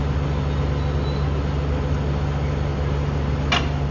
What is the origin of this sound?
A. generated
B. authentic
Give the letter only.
B